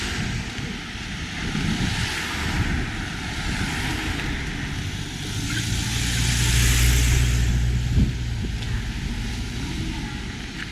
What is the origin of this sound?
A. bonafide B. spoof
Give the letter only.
A